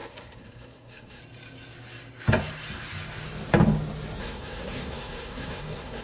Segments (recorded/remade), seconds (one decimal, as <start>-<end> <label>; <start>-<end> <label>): 0.0-1.2 remade; 1.2-4.2 recorded; 4.2-6.0 remade